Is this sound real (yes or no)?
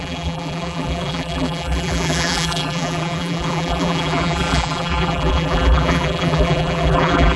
no